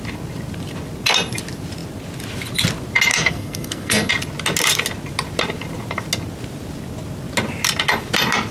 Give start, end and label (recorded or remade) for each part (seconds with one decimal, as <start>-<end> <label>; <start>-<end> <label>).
0.0-3.1 recorded; 3.1-4.1 remade; 4.1-8.5 recorded